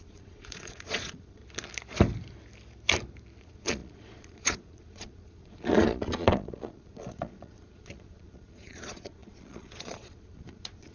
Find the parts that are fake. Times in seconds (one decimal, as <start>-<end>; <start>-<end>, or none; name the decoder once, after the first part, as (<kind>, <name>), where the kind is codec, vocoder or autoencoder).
0.0-1.4 (vocoder, Vocos); 3.4-10.9